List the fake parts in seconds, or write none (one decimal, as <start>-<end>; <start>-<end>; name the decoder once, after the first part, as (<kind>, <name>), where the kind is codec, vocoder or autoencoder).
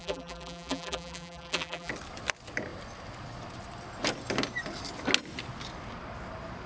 0.0-1.9 (vocoder, BigVGAN v2)